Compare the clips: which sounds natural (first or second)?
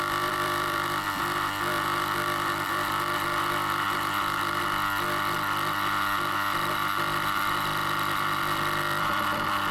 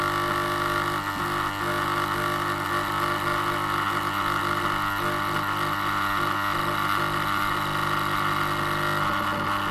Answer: second